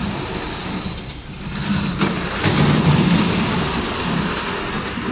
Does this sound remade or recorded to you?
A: recorded